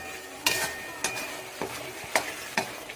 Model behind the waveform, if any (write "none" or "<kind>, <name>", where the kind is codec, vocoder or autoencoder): none